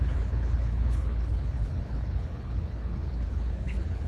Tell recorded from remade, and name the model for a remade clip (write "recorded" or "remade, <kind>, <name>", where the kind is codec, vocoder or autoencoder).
remade, codec, HILCodec